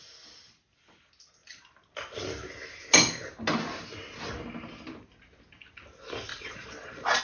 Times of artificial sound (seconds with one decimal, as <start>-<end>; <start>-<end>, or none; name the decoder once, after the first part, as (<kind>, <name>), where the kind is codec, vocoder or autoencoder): 6.3-7.2 (vocoder, Vocos)